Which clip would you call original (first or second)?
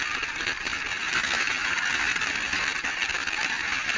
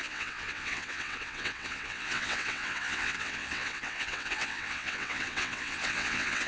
first